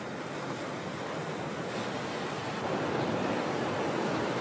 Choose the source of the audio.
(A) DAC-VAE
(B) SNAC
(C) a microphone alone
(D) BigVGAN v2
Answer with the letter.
C